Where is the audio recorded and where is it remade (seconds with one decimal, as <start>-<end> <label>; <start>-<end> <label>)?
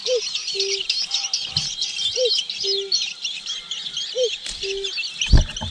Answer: 0.0-5.7 recorded